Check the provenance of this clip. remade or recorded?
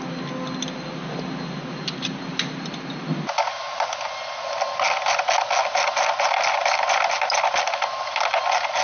recorded